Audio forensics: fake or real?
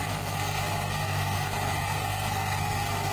fake